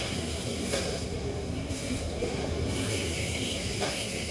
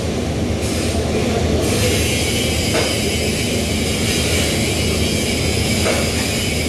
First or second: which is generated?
first